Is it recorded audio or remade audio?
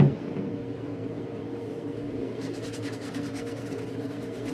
remade